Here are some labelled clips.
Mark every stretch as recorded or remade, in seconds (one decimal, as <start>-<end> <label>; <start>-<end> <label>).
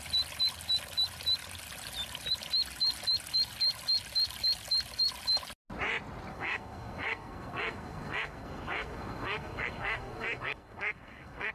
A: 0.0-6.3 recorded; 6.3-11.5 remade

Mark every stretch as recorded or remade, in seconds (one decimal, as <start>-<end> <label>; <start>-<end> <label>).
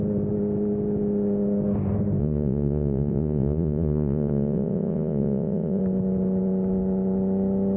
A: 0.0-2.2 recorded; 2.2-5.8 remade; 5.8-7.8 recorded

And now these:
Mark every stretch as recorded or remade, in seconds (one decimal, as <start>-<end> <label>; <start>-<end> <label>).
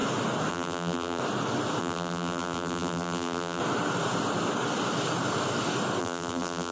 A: 0.0-0.5 recorded; 0.5-1.2 remade; 1.2-1.8 recorded; 1.8-3.6 remade; 3.6-6.0 recorded; 6.0-6.7 remade